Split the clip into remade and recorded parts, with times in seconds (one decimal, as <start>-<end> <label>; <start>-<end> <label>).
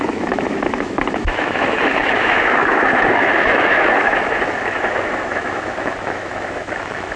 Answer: 0.0-7.2 remade